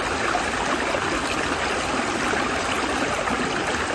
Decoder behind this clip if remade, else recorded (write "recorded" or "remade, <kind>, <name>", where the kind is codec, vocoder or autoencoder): recorded